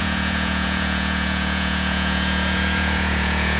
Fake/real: fake